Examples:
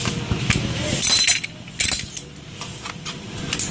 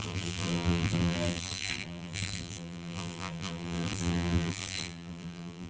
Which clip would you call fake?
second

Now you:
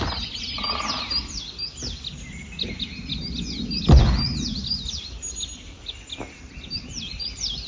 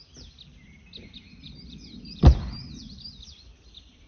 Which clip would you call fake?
second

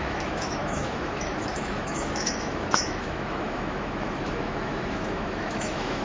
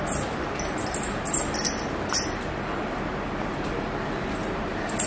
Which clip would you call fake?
first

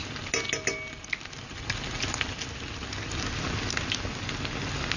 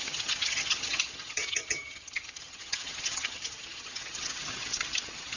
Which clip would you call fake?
second